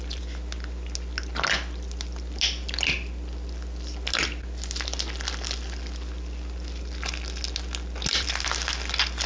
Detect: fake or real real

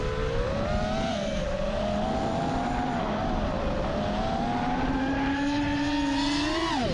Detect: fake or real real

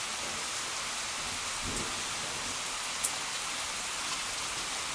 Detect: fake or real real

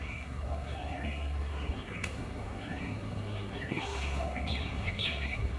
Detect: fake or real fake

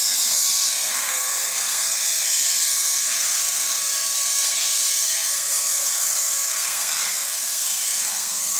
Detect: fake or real fake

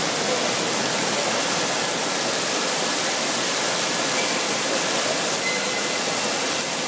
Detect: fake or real real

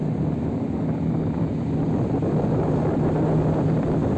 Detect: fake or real real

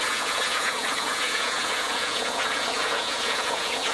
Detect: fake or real fake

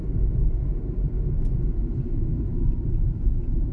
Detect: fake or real real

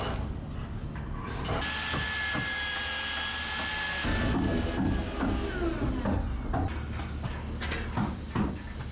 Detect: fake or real real